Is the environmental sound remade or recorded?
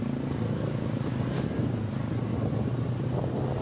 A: recorded